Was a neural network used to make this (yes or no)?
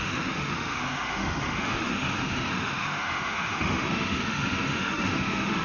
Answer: yes